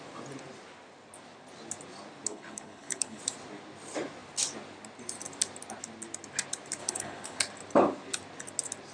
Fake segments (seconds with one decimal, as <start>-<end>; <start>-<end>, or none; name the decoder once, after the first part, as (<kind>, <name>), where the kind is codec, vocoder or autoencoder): 2.3-3.2 (codec, HILCodec); 6.8-7.4